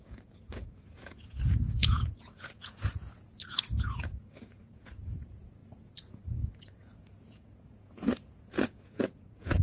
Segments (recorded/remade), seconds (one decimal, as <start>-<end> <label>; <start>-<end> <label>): 0.0-9.6 remade